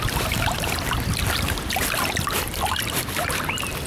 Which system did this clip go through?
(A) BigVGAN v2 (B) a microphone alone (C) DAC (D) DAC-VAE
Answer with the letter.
A